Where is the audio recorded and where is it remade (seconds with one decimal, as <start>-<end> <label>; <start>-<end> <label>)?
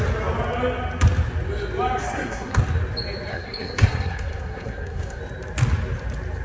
0.0-2.0 recorded; 2.0-2.6 remade; 2.6-3.3 recorded; 3.3-5.2 remade; 5.2-6.4 recorded